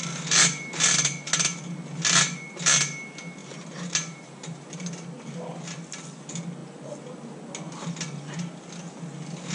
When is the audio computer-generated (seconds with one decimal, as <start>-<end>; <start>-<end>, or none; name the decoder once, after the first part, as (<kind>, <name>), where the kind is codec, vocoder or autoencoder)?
3.4-4.9 (vocoder, BigVGAN v2)